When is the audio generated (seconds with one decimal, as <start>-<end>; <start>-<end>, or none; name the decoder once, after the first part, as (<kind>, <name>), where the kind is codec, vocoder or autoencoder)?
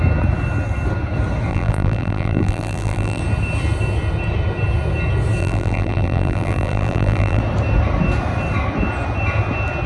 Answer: 1.5-3.2 (vocoder, BigVGAN v2); 5.4-7.4